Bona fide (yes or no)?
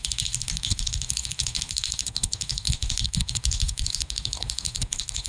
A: no